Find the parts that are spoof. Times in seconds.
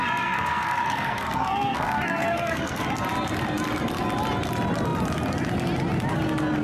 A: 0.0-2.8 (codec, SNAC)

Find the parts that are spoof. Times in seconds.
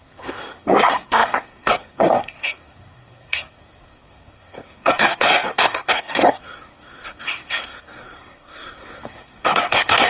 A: 0.0-10.1 (codec, SNAC)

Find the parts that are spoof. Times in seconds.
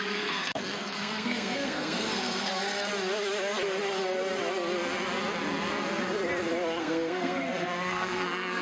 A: 0.0-2.9 (codec, SNAC); 6.8-8.6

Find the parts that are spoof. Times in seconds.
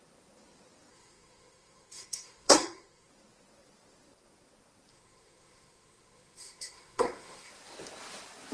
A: 0.9-3.1 (codec, SNAC); 4.9-7.5